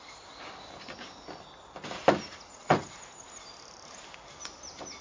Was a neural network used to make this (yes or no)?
no